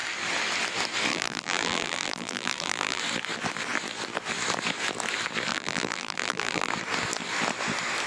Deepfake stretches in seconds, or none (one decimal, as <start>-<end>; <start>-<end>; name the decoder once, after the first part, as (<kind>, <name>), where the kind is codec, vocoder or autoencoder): 1.1-3.0 (vocoder, BigVGAN v2); 5.5-6.7